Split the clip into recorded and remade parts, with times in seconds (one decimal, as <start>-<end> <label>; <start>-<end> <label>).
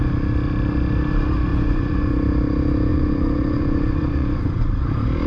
0.0-1.5 recorded; 1.5-2.1 remade; 2.1-2.9 recorded; 2.9-4.6 remade; 4.6-5.3 recorded